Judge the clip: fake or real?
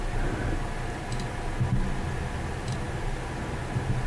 real